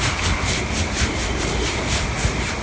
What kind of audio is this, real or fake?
real